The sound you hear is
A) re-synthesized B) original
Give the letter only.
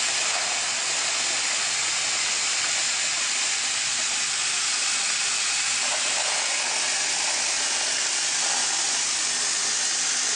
B